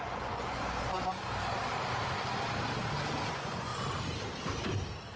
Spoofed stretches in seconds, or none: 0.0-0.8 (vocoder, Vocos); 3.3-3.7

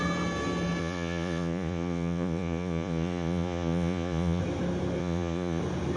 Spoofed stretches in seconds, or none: 0.8-4.4 (vocoder, Vocos); 5.0-5.6

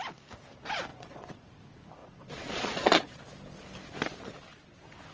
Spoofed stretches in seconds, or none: 0.9-1.5 (vocoder, Vocos); 2.0-3.2